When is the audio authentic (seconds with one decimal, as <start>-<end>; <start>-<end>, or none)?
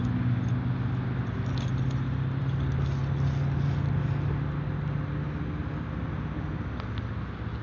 0.0-7.6